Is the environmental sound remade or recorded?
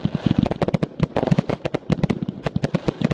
recorded